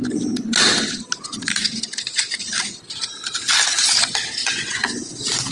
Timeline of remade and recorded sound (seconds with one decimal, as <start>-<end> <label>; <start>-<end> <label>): 0.0-4.4 recorded; 4.4-5.1 remade; 5.1-5.5 recorded